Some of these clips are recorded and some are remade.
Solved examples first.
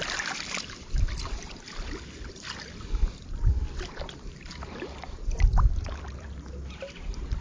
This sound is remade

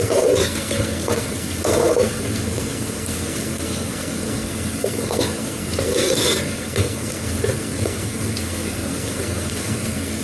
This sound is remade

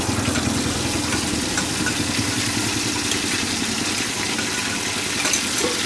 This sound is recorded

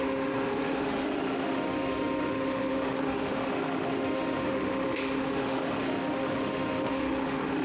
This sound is remade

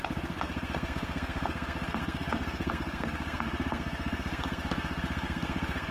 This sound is remade